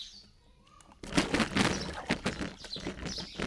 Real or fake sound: real